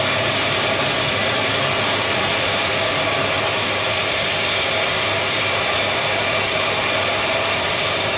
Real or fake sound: fake